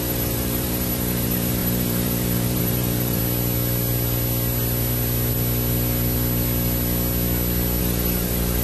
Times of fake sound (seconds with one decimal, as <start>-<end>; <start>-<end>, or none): 0.0-3.2; 7.8-8.6